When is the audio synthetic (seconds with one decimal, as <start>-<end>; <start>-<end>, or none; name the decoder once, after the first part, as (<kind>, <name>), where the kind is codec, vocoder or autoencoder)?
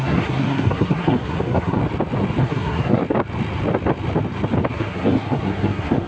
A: 0.0-1.8 (codec, SNAC); 2.4-3.0; 4.7-6.1